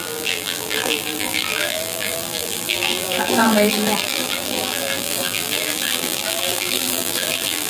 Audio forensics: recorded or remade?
remade